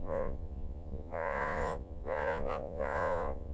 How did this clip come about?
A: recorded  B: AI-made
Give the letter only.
B